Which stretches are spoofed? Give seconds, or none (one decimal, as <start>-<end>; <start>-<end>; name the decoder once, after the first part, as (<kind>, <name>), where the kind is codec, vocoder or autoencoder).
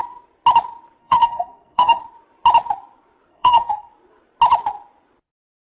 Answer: 1.0-2.0 (codec, SNAC); 3.3-3.9